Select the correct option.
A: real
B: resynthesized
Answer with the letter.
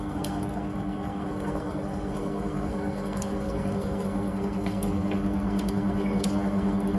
B